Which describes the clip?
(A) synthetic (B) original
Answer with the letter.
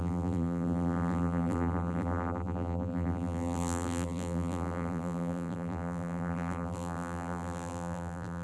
A